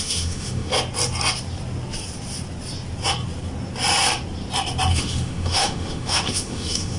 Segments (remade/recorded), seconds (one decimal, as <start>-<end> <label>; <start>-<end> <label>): 0.0-0.7 remade; 0.7-4.9 recorded; 4.9-7.0 remade